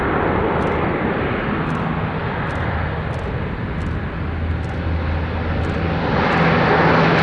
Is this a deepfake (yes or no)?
no